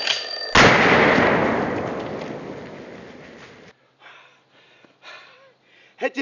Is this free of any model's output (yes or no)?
yes